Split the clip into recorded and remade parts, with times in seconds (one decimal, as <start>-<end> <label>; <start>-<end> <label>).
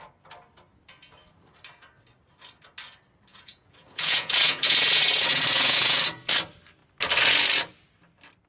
0.0-3.3 recorded; 3.3-6.3 remade; 6.3-8.5 recorded